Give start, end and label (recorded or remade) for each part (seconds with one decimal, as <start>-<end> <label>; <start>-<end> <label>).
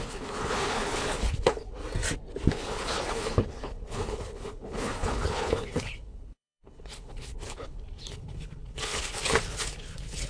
0.0-1.8 remade; 1.8-2.5 recorded; 2.5-10.3 remade